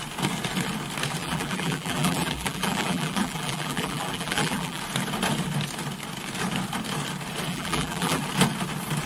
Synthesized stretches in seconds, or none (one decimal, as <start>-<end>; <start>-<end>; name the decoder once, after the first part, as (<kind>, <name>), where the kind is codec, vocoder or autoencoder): 1.2-4.8 (vocoder, BigVGAN v2); 7.5-8.2